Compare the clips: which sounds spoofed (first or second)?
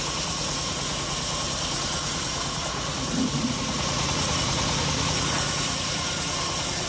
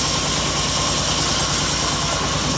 first